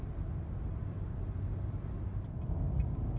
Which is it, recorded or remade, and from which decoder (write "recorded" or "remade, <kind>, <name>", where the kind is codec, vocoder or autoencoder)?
recorded